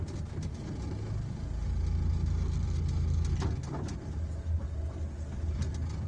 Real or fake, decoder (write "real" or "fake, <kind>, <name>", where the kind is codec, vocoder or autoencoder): real